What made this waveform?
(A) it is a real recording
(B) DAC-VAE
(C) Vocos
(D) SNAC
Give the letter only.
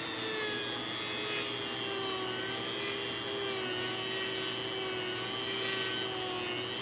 A